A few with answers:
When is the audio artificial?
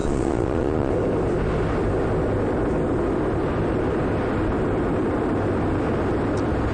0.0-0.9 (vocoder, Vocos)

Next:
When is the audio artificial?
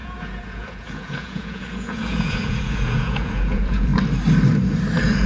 0.0-3.9 (vocoder, Vocos)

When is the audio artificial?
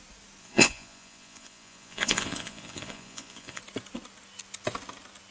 0.4-3.6 (vocoder, Vocos)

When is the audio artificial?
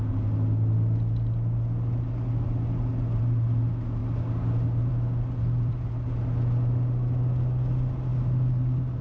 none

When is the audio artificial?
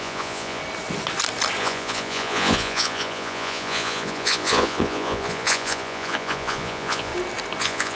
0.0-0.6 (vocoder, Vocos); 1.6-7.1; 7.6-8.0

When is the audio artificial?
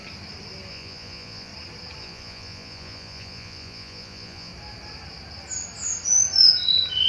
0.7-1.5 (vocoder, Vocos); 2.0-4.5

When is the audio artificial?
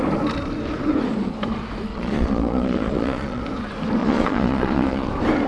1.9-3.4 (vocoder, Vocos); 4.0-5.1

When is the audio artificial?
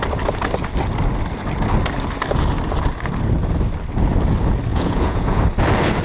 4.7-5.4 (vocoder, Vocos)